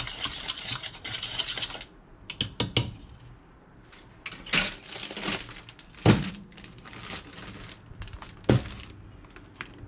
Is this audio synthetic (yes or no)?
no